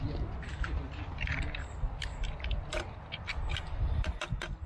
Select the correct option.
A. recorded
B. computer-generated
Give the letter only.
A